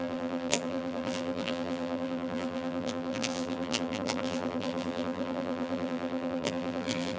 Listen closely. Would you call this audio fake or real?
fake